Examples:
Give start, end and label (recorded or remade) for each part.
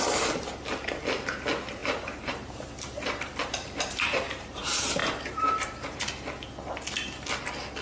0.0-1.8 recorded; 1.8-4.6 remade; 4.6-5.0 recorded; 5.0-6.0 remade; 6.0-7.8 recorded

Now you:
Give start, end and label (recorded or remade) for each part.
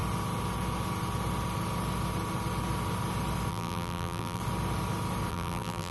0.0-3.5 recorded; 3.5-4.4 remade; 4.4-5.3 recorded; 5.3-5.9 remade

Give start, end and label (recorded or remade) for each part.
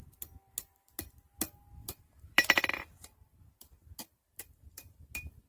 0.0-1.8 recorded; 1.8-5.1 remade; 5.1-5.5 recorded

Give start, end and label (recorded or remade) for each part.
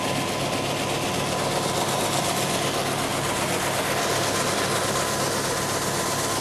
0.0-6.4 recorded